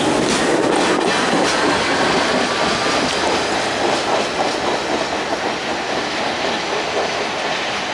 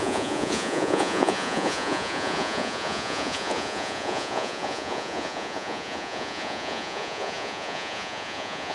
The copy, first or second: second